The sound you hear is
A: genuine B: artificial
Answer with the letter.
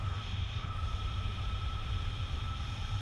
B